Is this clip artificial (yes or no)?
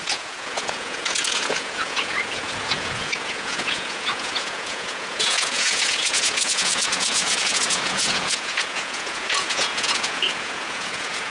yes